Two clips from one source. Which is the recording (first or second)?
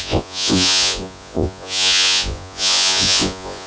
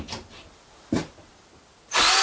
second